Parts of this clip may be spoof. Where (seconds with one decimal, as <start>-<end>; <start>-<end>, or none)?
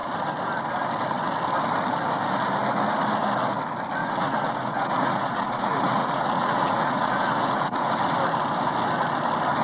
4.0-7.9